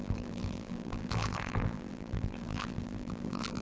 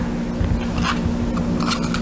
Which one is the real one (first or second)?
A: second